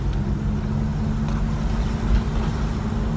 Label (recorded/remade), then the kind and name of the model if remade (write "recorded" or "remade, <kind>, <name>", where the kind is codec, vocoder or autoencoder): recorded